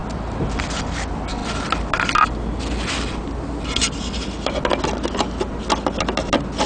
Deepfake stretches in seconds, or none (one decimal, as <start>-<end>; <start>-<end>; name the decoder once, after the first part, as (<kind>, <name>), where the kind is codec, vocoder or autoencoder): none